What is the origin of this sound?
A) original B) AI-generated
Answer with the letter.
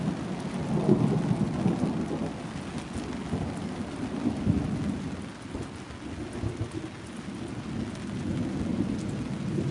A